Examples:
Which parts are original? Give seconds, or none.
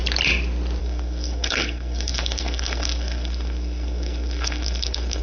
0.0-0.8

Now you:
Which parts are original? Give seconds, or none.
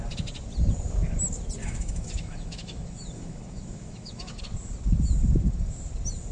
0.0-1.6; 4.4-6.3